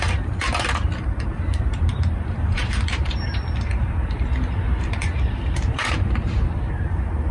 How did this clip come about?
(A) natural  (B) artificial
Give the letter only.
B